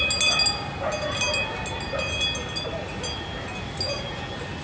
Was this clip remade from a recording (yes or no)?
no